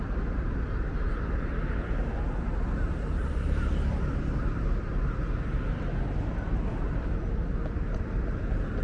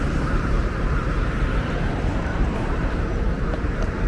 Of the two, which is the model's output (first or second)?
second